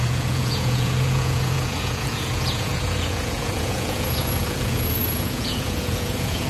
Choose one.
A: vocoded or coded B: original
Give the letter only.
A